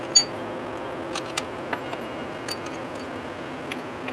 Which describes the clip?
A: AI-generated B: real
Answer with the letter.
B